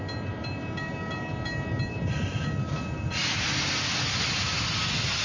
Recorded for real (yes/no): yes